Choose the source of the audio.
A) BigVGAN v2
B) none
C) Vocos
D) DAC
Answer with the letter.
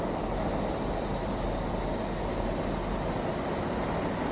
B